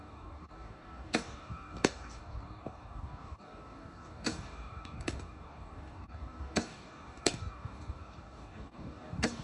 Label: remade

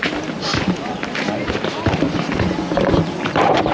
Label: recorded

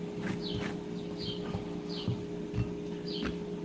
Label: recorded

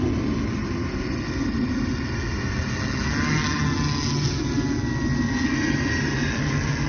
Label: recorded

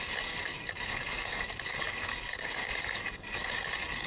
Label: remade